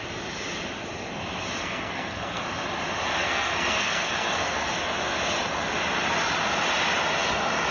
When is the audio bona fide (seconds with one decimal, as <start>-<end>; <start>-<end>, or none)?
0.0-1.6; 2.4-3.2; 4.7-7.7